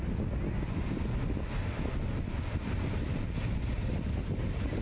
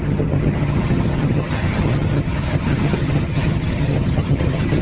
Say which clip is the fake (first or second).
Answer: second